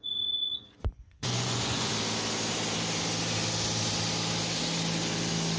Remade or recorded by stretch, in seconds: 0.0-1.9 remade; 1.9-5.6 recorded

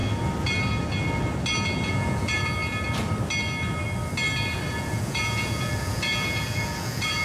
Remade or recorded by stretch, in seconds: 0.0-1.9 recorded; 1.9-2.6 remade; 2.6-4.7 recorded; 4.7-7.2 remade

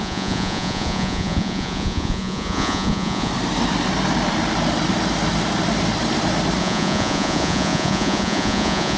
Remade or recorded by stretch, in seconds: 0.0-3.3 remade; 3.3-6.6 recorded; 6.6-9.0 remade

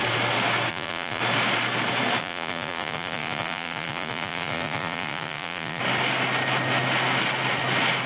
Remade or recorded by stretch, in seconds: 0.0-0.7 recorded; 0.7-1.2 remade; 1.2-2.2 recorded; 2.2-5.8 remade; 5.8-8.1 recorded

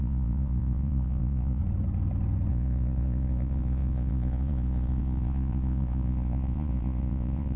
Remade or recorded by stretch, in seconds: 0.0-1.6 remade; 1.6-2.5 recorded; 2.5-7.6 remade

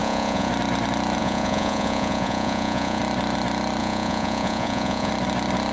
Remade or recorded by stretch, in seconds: 0.0-0.5 remade; 0.5-1.2 recorded; 1.2-3.0 remade; 3.0-3.8 recorded; 3.8-5.1 remade; 5.1-5.7 recorded